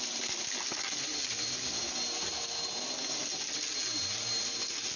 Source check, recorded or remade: recorded